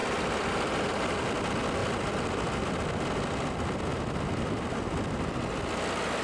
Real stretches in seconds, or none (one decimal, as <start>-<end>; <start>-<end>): 0.0-6.2